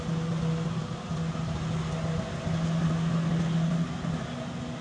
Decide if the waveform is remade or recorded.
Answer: recorded